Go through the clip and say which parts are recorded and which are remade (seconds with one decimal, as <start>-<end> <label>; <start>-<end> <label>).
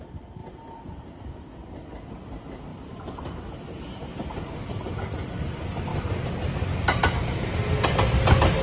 0.0-8.6 recorded